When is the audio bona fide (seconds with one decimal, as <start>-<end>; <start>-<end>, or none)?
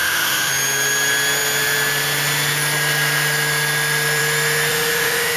0.5-4.7